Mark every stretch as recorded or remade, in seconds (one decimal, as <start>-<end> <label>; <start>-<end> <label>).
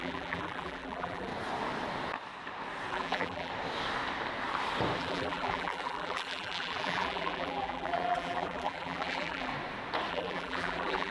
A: 0.0-1.3 remade; 1.3-2.9 recorded; 2.9-3.5 remade; 3.5-5.0 recorded; 5.0-9.5 remade; 9.5-10.1 recorded; 10.1-11.1 remade